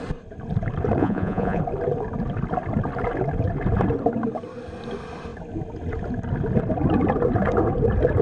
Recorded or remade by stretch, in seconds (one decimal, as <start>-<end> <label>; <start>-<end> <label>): 0.0-1.0 recorded; 1.0-1.6 remade; 1.6-8.2 recorded

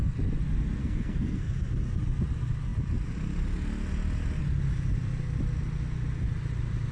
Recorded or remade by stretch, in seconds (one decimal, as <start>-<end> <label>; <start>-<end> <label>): 0.0-0.8 recorded; 0.8-1.7 remade; 1.7-6.9 recorded

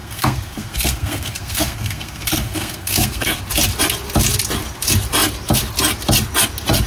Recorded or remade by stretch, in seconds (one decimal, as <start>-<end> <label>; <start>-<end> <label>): 0.0-3.4 remade; 3.4-6.9 recorded

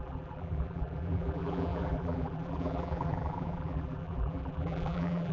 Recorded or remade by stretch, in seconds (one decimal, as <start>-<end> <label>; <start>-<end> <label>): 0.0-5.3 remade

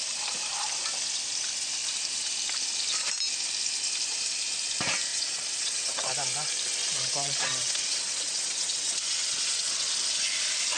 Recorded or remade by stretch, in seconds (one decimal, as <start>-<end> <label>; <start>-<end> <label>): 0.0-5.1 recorded; 5.1-6.1 remade; 6.1-6.8 recorded; 6.8-9.9 remade; 9.9-10.8 recorded

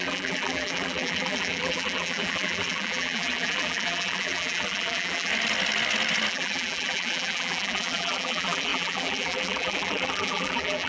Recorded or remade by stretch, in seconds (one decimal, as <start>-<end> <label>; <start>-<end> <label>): 0.0-5.3 remade; 5.3-6.3 recorded; 6.3-10.9 remade

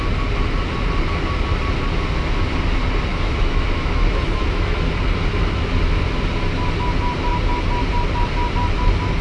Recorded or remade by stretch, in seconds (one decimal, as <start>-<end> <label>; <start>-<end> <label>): 0.0-3.1 recorded; 3.1-4.9 remade; 4.9-9.2 recorded

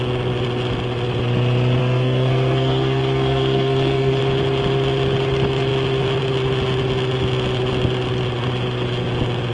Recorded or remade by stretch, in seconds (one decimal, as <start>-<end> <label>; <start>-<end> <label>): 0.0-1.8 recorded; 1.8-4.2 remade; 4.2-9.5 recorded